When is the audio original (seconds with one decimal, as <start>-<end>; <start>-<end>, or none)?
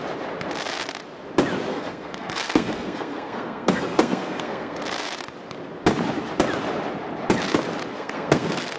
0.0-1.7; 4.8-7.9